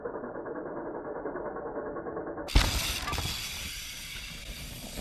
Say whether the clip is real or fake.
real